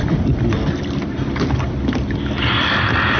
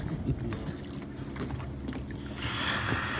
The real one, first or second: second